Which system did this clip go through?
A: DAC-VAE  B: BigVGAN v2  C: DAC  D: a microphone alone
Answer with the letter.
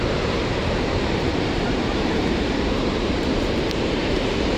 B